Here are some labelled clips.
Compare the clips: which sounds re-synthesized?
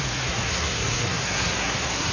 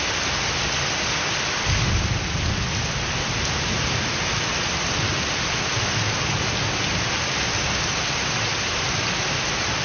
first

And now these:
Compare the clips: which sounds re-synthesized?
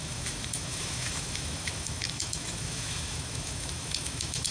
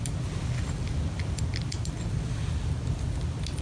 first